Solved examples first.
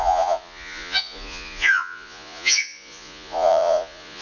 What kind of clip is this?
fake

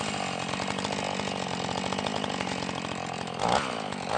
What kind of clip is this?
real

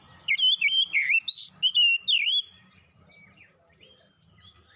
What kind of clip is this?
real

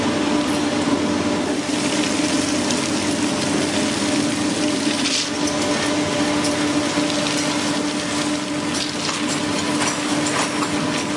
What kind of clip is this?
real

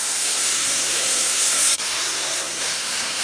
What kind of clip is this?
fake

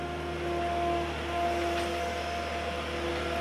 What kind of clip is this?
real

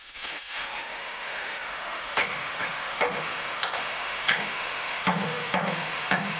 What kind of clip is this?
fake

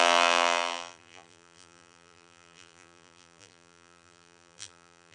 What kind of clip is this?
fake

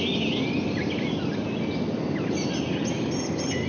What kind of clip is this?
real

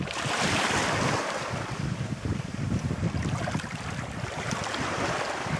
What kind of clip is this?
real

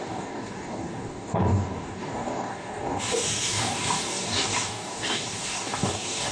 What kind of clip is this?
fake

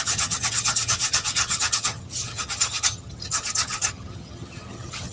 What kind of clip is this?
fake